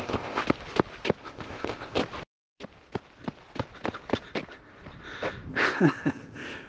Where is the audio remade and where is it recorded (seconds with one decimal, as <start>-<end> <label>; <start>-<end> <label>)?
0.0-0.4 remade; 0.4-1.2 recorded; 1.2-2.0 remade; 2.0-5.5 recorded; 5.5-6.7 remade